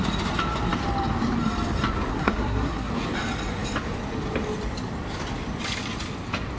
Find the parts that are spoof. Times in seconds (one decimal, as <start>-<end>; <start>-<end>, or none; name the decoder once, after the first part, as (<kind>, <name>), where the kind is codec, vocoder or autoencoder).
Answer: 2.1-2.9 (codec, SNAC)